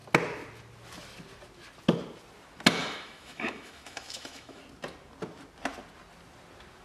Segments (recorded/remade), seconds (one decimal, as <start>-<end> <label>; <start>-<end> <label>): 0.0-2.8 recorded; 2.8-4.6 remade; 4.6-6.8 recorded